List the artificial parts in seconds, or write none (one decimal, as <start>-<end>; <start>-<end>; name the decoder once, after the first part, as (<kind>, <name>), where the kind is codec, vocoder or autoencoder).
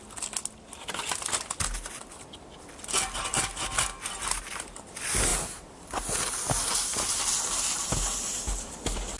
none